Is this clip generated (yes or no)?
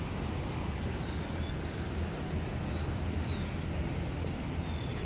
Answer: no